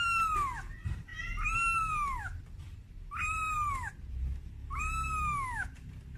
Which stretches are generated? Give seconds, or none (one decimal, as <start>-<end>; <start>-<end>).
none